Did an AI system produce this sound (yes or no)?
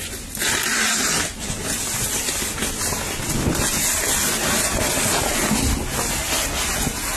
no